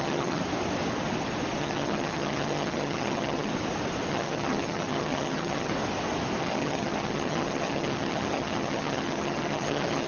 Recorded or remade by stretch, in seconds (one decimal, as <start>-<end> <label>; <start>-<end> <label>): 0.0-0.4 remade; 0.4-1.6 recorded; 1.6-3.5 remade; 3.5-4.1 recorded; 4.1-5.7 remade; 5.7-6.4 recorded; 6.4-10.1 remade